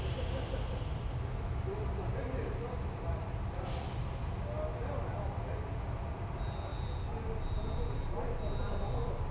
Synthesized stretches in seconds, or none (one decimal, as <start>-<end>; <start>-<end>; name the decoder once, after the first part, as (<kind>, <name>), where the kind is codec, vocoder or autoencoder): none